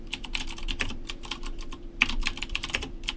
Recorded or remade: remade